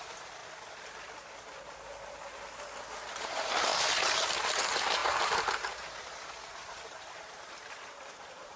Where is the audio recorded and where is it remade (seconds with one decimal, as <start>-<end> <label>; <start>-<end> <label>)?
0.0-0.4 remade; 0.4-3.1 recorded; 3.1-3.7 remade; 3.7-4.5 recorded; 4.5-8.6 remade